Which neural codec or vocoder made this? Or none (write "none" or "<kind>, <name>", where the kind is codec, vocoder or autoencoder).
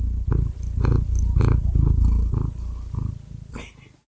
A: none